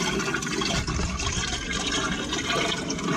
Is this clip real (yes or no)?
yes